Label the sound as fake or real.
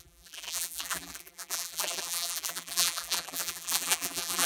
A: fake